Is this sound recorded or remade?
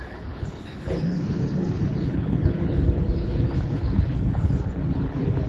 remade